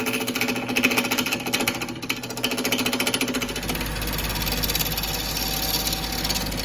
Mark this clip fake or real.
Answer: real